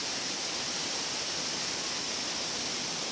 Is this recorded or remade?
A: recorded